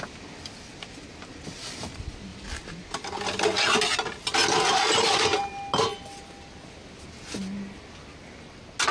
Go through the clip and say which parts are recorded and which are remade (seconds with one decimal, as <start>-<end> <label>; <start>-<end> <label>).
0.0-2.3 recorded; 2.3-3.4 remade; 3.4-4.4 recorded; 4.4-5.4 remade; 5.4-8.9 recorded